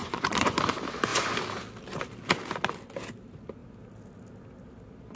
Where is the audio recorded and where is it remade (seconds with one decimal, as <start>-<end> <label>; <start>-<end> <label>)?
0.0-0.6 remade; 0.6-5.2 recorded